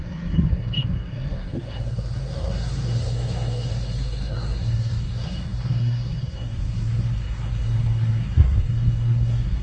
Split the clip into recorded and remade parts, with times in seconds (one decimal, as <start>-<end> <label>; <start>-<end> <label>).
0.0-9.6 remade